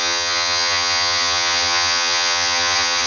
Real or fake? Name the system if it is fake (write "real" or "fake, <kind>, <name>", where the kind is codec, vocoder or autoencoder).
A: fake, vocoder, HiFi-GAN